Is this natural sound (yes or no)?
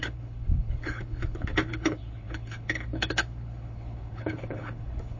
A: no